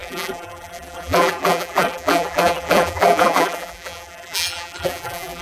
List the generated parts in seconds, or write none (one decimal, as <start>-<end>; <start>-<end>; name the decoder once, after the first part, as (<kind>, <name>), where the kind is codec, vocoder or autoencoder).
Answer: 0.0-5.4 (vocoder, BigVGAN v2)